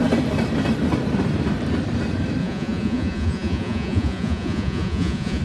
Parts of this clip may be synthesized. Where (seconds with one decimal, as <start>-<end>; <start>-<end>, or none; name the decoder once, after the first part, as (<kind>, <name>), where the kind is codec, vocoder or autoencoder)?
2.4-5.4 (vocoder, Vocos)